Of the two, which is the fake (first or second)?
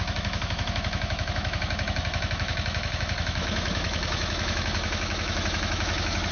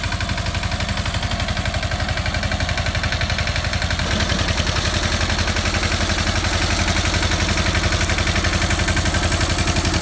first